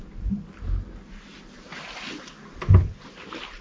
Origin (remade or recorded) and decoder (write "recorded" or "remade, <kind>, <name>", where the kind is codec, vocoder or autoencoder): recorded